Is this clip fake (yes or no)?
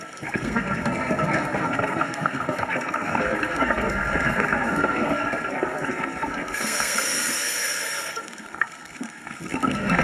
yes